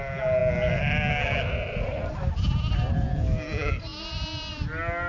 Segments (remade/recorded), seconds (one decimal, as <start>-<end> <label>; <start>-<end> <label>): 0.0-5.1 recorded